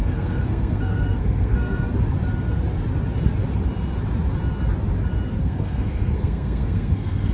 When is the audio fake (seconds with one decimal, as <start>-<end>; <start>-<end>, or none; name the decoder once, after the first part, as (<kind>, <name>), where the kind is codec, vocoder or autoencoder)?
0.0-1.9 (codec, SNAC); 5.3-7.3